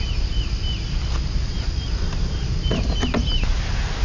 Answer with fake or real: real